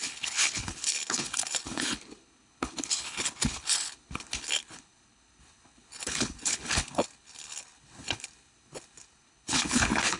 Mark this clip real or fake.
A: fake